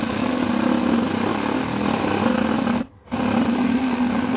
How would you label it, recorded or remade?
recorded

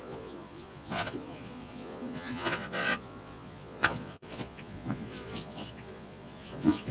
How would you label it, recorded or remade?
remade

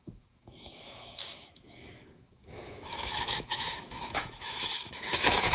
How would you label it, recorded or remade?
remade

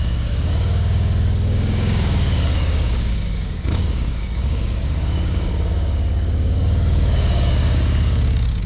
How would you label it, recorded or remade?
remade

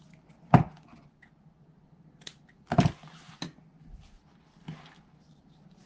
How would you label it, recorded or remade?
recorded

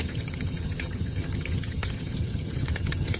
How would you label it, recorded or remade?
remade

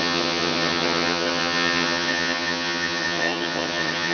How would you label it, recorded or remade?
remade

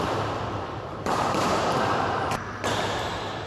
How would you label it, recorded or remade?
remade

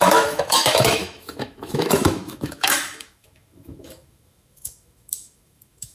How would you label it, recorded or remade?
remade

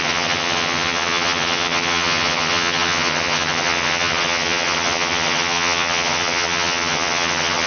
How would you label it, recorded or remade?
remade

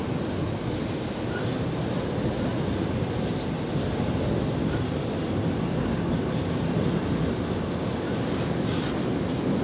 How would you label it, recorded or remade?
recorded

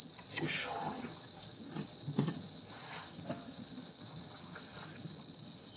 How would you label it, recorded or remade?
remade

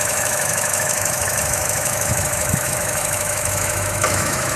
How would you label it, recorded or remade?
remade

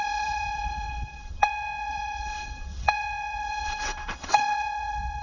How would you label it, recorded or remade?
remade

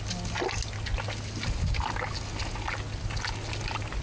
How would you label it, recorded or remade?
recorded